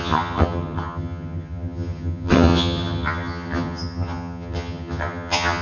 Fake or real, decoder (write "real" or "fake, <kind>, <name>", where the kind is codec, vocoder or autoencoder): fake, vocoder, HiFi-GAN